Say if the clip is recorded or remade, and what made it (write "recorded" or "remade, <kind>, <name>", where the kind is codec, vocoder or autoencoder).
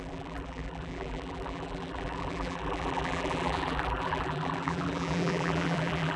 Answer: remade, vocoder, BigVGAN v2